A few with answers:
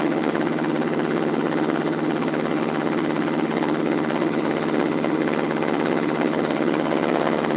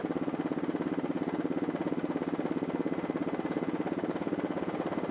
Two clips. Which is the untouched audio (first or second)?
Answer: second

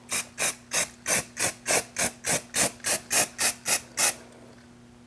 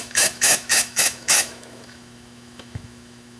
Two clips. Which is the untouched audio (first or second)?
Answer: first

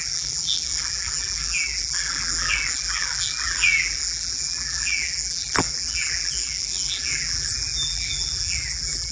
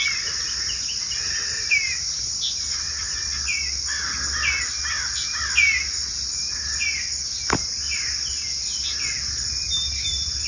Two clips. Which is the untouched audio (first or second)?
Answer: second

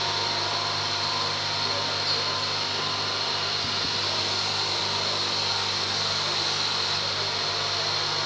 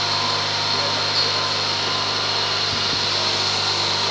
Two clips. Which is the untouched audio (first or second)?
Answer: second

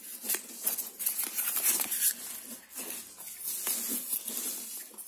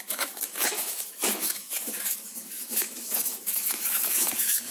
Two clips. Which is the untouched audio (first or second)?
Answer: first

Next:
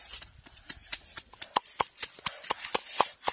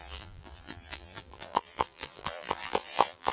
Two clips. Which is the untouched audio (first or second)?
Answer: first